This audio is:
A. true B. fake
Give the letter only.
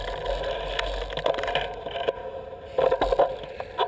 A